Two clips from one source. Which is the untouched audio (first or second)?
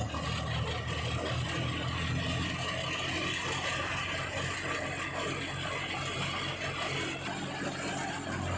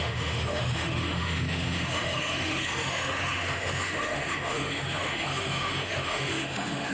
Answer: first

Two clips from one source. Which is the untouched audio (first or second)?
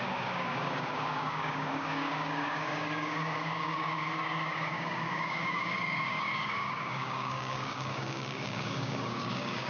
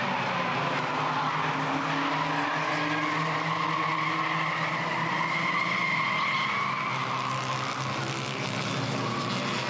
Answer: second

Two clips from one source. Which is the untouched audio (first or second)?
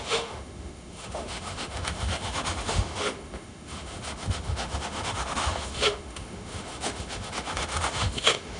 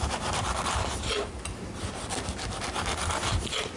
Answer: second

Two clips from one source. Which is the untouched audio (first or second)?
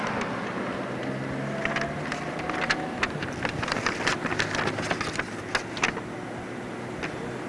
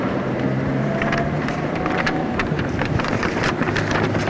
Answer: first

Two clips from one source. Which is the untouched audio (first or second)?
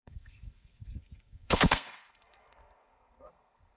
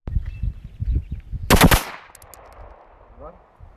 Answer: second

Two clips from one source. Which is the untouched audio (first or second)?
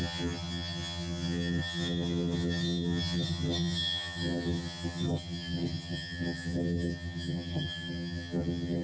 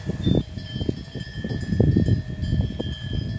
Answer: second